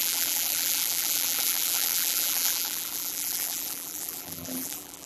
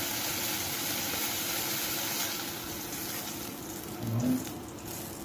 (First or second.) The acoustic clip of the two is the second